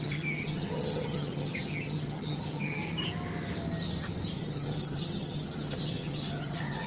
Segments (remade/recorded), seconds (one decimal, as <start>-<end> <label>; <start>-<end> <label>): 0.0-2.8 remade; 2.8-4.4 recorded; 4.4-6.9 remade